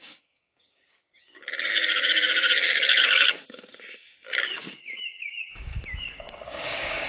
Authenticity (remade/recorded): remade